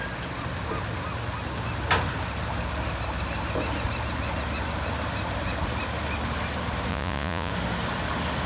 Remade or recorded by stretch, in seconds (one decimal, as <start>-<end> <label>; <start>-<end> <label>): 0.0-6.9 recorded; 6.9-7.5 remade; 7.5-8.5 recorded